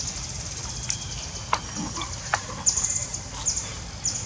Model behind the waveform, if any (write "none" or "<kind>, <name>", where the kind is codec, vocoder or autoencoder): none